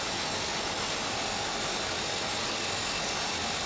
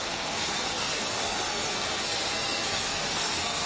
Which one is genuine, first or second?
first